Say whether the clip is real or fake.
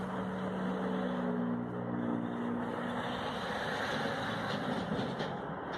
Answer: real